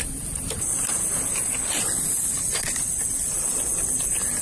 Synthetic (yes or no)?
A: no